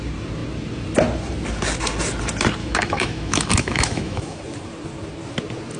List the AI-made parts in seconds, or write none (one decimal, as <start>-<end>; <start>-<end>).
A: 2.6-4.4